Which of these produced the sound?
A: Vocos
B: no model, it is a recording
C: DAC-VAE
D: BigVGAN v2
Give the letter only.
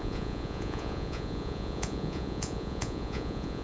A